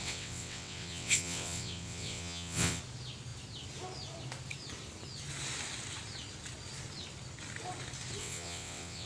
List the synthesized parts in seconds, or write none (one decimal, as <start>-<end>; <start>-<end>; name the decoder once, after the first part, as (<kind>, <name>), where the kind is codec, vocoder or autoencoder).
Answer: 0.0-2.8 (vocoder, WaveNeXt); 8.2-9.1